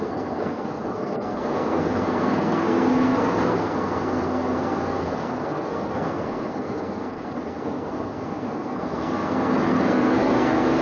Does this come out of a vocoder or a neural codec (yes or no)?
yes